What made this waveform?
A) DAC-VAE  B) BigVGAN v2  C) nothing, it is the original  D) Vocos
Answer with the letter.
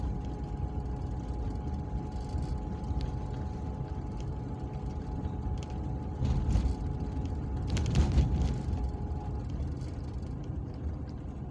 C